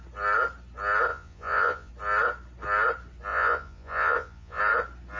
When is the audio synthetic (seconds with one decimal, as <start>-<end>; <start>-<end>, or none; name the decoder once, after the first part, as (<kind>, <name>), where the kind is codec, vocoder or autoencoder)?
1.1-1.9 (vocoder, Vocos); 3.3-4.6